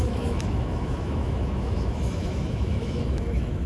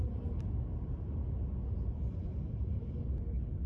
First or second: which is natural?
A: second